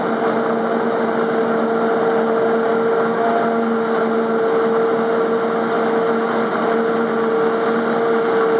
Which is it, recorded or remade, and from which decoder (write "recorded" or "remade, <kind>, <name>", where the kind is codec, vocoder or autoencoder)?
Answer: recorded